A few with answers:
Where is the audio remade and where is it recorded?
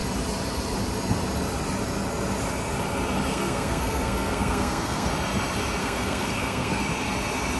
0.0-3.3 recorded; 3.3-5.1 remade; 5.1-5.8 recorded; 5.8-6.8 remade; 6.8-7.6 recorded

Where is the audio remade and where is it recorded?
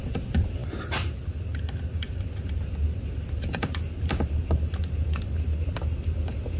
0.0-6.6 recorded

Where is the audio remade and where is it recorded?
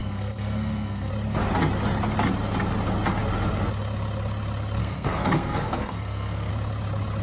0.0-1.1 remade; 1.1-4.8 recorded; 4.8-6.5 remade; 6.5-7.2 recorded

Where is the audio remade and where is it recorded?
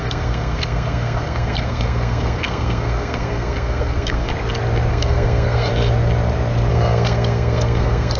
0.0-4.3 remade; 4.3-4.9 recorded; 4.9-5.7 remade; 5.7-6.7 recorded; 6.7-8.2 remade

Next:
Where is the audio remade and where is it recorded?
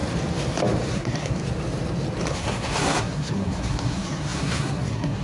0.0-0.9 recorded; 0.9-1.4 remade; 1.4-2.3 recorded; 2.3-5.2 remade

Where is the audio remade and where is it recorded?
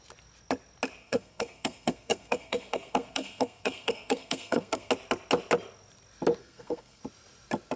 0.0-1.0 recorded; 1.0-4.9 remade; 4.9-6.4 recorded; 6.4-7.0 remade; 7.0-7.8 recorded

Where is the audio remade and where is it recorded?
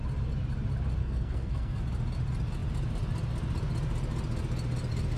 0.0-1.0 recorded; 1.0-1.8 remade; 1.8-5.2 recorded